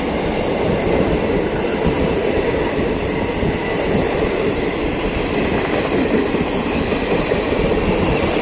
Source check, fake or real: fake